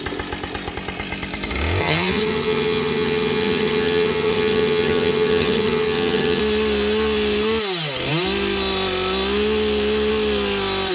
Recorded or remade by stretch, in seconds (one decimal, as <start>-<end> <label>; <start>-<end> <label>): 0.0-1.8 recorded; 1.8-6.4 remade; 6.4-10.9 recorded